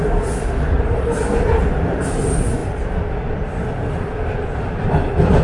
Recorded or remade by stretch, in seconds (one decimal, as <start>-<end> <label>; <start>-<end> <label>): 0.0-5.4 recorded